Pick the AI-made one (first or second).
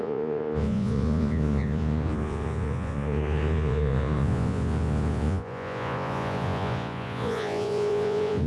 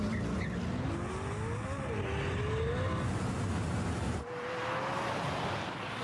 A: first